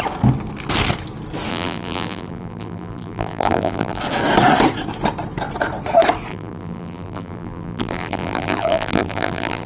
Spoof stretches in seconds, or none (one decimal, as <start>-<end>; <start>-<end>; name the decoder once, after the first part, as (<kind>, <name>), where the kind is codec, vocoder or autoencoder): 1.5-4.0 (vocoder, BigVGAN v2); 6.3-9.7